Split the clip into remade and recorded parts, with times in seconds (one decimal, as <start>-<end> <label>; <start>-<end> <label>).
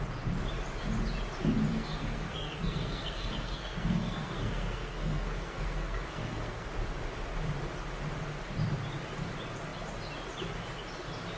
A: 0.0-1.7 recorded; 1.7-6.7 remade; 6.7-11.4 recorded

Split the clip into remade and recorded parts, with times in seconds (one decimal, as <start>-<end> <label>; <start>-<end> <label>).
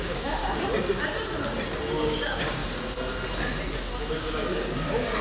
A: 0.0-0.4 remade; 0.4-2.0 recorded; 2.0-2.6 remade; 2.6-4.0 recorded; 4.0-5.2 remade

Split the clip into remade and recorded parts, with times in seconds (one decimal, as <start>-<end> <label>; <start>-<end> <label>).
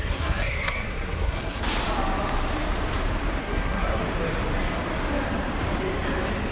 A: 0.0-1.6 remade; 1.6-3.4 recorded; 3.4-4.0 remade; 4.0-6.5 recorded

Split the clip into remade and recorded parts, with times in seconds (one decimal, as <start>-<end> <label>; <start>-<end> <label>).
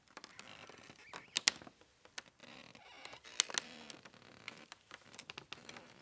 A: 0.0-6.0 recorded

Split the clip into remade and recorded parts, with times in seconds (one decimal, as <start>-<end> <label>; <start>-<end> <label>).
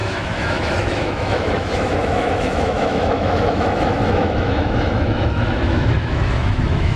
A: 0.0-7.0 remade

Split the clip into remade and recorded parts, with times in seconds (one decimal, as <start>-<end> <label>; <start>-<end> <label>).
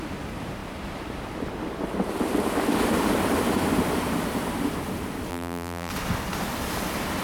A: 0.0-5.3 recorded; 5.3-5.9 remade; 5.9-7.2 recorded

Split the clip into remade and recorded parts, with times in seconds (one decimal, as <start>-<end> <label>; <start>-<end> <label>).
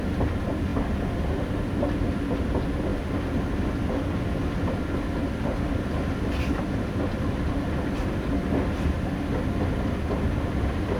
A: 0.0-11.0 recorded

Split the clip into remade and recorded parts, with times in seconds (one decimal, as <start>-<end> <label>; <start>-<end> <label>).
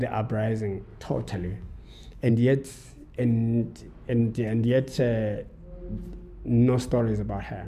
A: 0.0-0.9 recorded; 0.9-2.3 remade; 2.3-4.2 recorded; 4.2-5.0 remade; 5.0-7.7 recorded